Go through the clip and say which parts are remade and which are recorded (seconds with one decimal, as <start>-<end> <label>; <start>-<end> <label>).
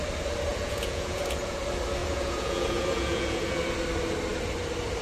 0.0-0.5 recorded; 0.5-1.6 remade; 1.6-2.0 recorded; 2.0-3.6 remade; 3.6-5.0 recorded